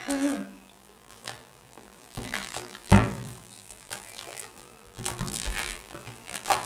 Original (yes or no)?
no